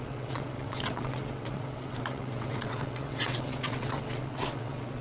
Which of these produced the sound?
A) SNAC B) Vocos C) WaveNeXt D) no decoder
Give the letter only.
C